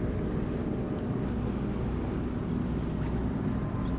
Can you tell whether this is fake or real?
real